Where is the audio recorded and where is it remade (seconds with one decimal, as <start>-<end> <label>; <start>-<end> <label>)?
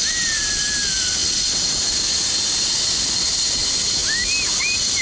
0.0-5.0 recorded